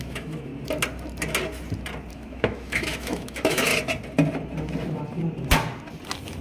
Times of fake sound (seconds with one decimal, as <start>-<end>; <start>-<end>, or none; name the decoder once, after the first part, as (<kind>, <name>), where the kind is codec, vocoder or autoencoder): 0.0-0.5 (autoencoder, DAC-VAE); 2.1-3.7